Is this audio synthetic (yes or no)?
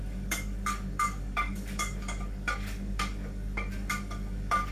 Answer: yes